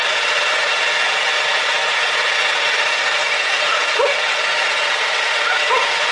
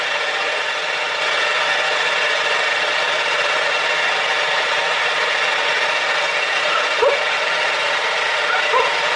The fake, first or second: second